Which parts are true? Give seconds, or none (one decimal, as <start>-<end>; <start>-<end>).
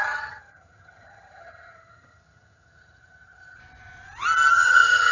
3.6-4.5